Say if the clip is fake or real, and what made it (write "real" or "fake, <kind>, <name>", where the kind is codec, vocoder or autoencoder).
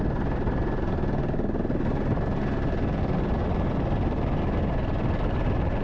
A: real